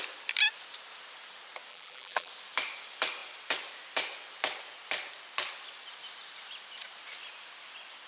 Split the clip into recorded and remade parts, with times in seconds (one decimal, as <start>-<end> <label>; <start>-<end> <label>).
0.0-1.7 recorded; 1.7-2.3 remade; 2.3-8.1 recorded